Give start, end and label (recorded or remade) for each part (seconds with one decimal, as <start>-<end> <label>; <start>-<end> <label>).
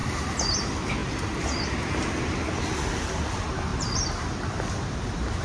0.0-3.7 recorded; 3.7-4.8 remade; 4.8-5.4 recorded